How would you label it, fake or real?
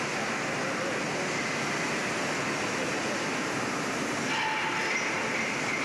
real